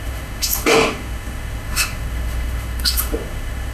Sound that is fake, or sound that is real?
fake